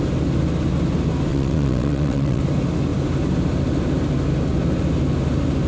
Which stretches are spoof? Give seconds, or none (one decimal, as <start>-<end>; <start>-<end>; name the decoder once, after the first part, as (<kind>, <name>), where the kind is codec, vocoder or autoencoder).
1.3-2.4 (vocoder, WaveNeXt)